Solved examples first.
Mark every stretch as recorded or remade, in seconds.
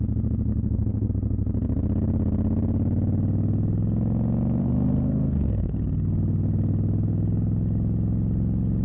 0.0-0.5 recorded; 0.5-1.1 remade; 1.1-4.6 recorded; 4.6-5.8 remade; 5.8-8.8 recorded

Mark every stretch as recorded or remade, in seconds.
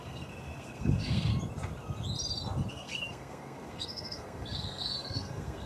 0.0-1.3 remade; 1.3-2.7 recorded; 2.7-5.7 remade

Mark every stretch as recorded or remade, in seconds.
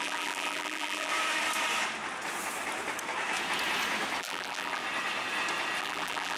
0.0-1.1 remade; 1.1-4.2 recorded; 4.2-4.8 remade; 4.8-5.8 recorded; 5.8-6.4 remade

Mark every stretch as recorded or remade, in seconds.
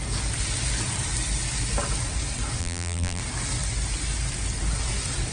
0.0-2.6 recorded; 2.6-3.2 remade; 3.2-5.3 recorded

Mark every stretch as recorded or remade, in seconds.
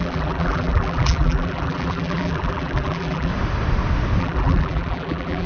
0.0-3.3 remade; 3.3-4.2 recorded; 4.2-5.5 remade